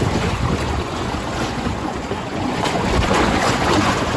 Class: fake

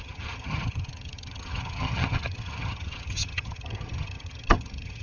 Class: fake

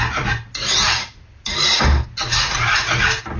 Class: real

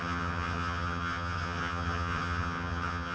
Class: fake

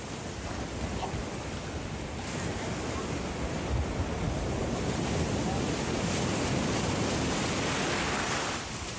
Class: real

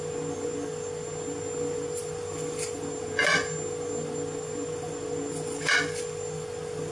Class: real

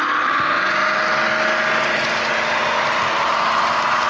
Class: real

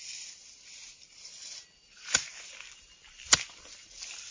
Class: real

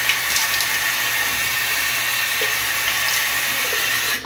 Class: real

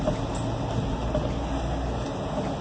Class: real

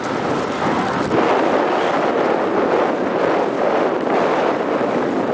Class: real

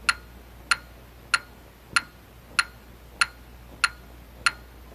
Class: real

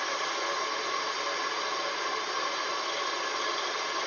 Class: real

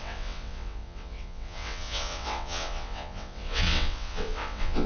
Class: fake